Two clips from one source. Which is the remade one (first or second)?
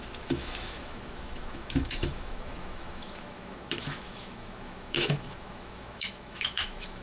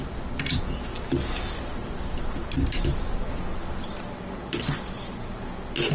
first